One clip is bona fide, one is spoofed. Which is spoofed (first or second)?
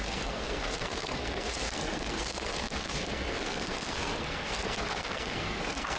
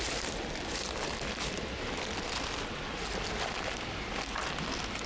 first